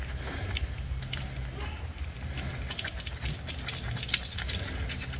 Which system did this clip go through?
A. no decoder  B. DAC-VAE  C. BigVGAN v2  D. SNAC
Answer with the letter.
A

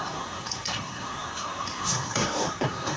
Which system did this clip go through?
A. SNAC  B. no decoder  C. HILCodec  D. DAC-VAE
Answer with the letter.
A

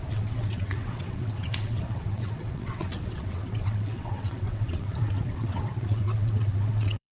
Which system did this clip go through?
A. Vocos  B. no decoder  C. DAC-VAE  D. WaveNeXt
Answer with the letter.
D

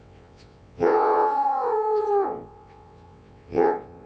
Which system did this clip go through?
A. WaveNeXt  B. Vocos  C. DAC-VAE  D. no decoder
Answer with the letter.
A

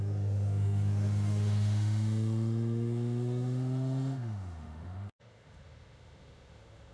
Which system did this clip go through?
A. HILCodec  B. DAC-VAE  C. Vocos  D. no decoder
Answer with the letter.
B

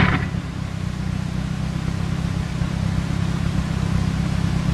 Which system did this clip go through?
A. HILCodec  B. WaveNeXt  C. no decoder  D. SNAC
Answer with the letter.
C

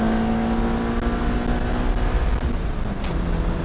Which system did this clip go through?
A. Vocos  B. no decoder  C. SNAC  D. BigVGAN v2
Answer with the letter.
B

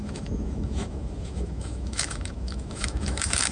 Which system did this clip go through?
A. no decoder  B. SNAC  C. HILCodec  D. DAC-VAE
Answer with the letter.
D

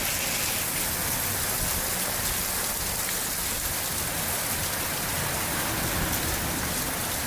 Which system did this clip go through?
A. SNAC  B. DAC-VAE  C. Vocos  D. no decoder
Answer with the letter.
D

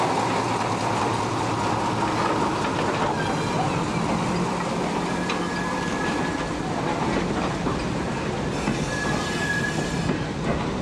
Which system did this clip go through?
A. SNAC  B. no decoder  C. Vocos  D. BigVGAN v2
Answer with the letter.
B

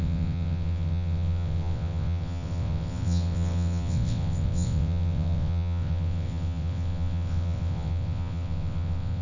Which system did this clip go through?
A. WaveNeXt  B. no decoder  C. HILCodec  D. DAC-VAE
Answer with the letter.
A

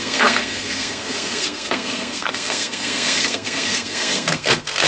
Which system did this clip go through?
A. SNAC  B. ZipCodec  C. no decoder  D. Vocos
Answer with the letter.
A